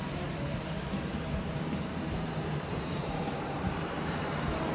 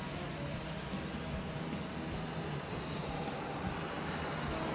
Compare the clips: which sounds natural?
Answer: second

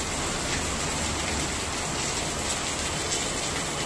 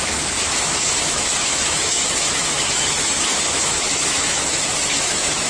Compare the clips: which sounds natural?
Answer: first